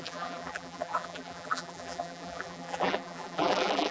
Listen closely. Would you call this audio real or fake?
fake